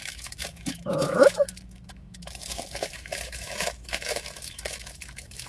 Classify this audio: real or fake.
fake